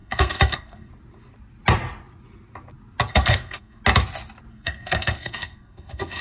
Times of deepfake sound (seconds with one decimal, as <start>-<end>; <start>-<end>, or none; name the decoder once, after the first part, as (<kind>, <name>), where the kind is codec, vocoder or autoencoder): 0.0-0.9 (codec, SNAC); 3.1-3.8; 4.5-6.2